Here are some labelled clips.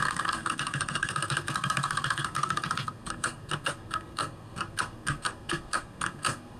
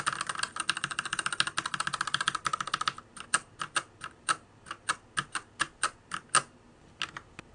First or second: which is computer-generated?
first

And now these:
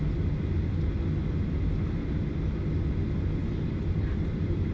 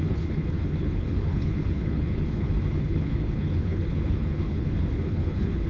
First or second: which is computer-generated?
second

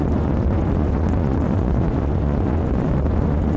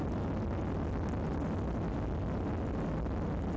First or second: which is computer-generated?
first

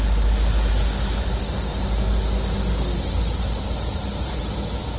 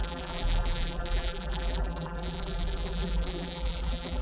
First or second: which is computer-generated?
second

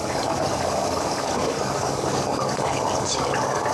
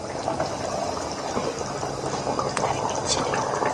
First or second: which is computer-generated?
first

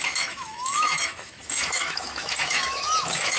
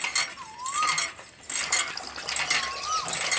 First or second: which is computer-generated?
first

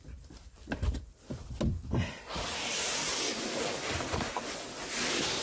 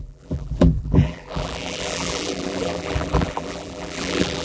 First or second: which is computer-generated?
second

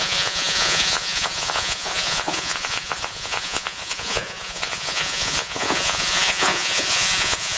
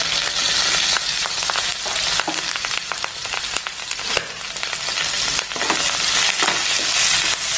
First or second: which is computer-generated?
first